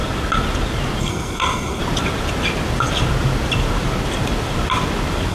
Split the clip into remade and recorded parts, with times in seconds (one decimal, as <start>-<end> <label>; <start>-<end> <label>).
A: 0.0-1.0 recorded; 1.0-1.8 remade; 1.8-5.3 recorded